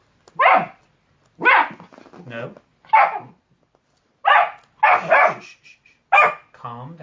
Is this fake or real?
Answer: real